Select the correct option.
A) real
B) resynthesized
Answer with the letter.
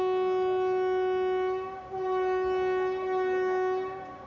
A